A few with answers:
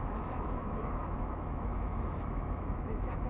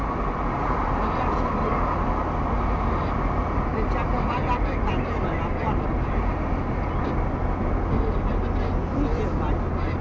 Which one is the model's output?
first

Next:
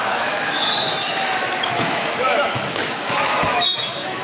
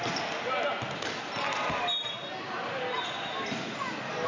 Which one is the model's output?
first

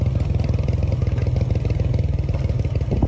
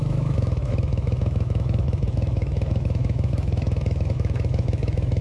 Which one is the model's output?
second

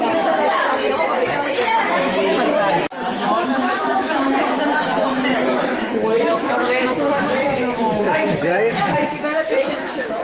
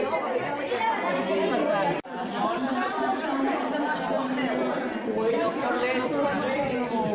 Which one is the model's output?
first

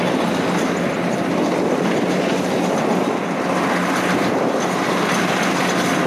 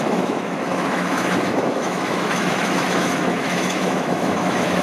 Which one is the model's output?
second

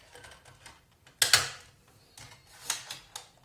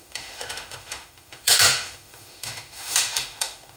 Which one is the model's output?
second